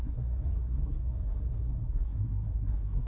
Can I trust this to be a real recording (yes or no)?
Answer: no